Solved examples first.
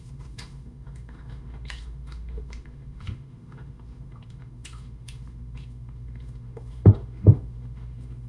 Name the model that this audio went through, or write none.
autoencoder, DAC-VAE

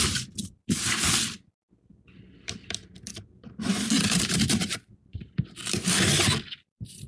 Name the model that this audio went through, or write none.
vocoder, BigVGAN v2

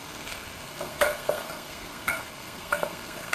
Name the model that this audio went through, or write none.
codec, SNAC